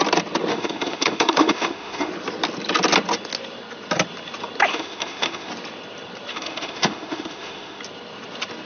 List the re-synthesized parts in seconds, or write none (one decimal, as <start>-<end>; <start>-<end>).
0.5-2.1; 4.7-5.5; 6.3-7.8